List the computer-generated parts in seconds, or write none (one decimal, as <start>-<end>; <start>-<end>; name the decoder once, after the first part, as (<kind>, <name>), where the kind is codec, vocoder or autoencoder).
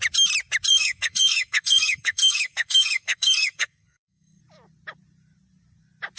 0.7-4.4 (codec, SNAC)